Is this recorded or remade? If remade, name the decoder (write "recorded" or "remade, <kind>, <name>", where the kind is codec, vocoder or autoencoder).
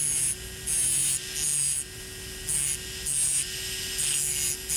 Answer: recorded